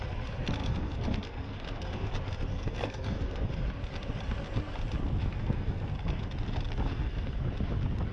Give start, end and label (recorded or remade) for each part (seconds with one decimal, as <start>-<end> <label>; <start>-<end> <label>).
0.0-0.6 recorded; 0.6-2.1 remade; 2.1-2.5 recorded; 2.5-3.5 remade; 3.5-5.2 recorded; 5.2-5.9 remade; 5.9-6.9 recorded; 6.9-7.4 remade; 7.4-8.1 recorded